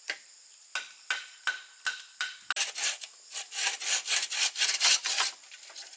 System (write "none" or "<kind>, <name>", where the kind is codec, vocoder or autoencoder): none